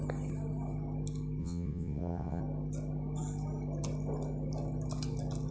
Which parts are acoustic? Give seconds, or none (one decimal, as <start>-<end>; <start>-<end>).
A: 0.0-1.4; 2.4-5.5